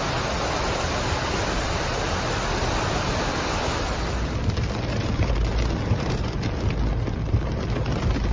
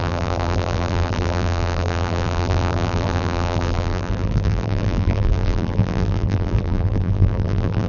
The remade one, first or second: second